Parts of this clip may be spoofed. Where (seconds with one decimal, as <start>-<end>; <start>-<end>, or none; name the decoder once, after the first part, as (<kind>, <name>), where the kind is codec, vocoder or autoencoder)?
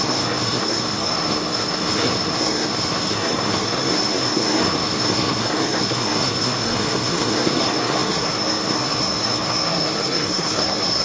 0.0-11.0 (codec, SNAC)